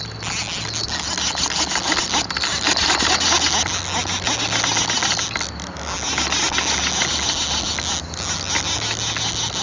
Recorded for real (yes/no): yes